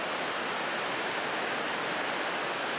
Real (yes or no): yes